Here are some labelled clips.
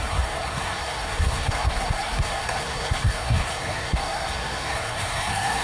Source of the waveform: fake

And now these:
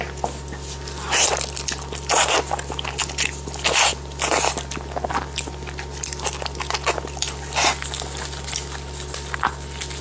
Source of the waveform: real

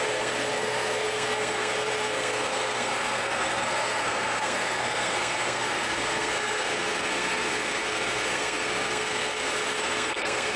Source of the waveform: fake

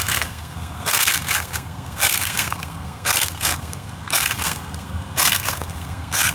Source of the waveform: fake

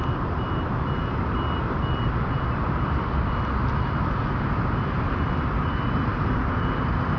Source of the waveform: real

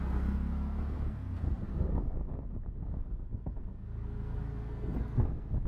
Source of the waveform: fake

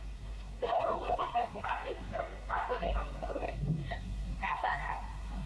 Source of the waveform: fake